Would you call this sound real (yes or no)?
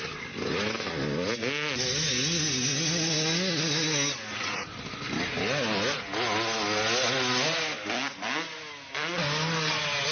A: yes